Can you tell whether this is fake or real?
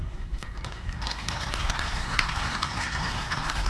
fake